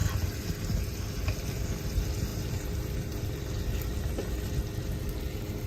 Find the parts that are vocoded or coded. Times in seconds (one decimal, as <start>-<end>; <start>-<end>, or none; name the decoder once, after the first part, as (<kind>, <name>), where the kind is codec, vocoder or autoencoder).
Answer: 2.3-3.4 (vocoder, BigVGAN v2)